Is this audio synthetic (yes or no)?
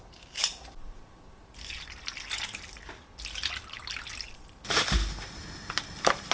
no